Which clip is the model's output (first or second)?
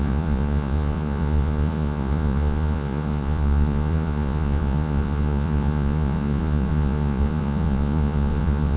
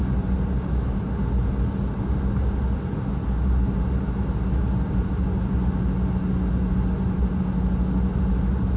first